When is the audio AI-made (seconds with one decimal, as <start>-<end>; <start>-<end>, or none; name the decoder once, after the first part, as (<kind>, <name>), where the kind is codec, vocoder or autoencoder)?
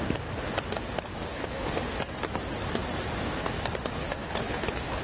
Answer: 1.3-1.8 (codec, HILCodec); 4.0-5.0